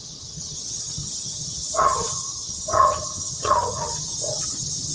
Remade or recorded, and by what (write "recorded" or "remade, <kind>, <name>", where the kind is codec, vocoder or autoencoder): remade, vocoder, HiFi-GAN